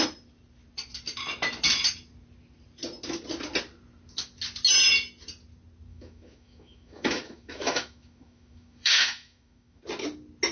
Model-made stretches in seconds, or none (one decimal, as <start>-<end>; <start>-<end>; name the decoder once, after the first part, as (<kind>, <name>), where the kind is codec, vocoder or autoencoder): 5.9-9.8 (autoencoder, DAC-VAE)